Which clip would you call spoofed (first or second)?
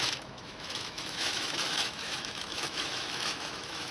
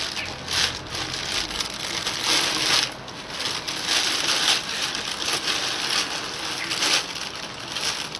first